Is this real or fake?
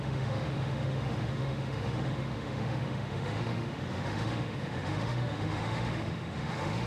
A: fake